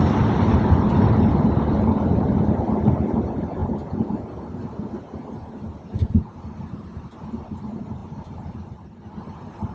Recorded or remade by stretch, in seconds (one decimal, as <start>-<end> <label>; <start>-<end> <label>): 0.0-9.7 recorded